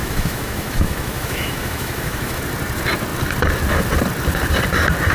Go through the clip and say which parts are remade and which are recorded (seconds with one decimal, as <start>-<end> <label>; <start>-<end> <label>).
0.0-2.4 remade; 2.4-5.1 recorded